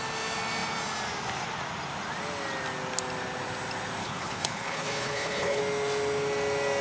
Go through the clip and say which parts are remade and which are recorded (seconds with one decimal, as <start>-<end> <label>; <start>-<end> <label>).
0.0-4.0 recorded; 4.0-5.6 remade; 5.6-6.8 recorded